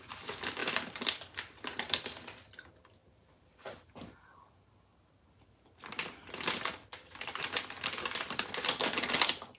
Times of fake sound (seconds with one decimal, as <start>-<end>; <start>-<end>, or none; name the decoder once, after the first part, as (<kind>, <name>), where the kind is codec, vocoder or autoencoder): 0.6-2.5 (vocoder, BigVGAN v2); 3.0-3.9